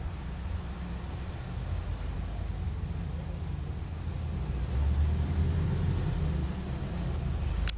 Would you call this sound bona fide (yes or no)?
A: yes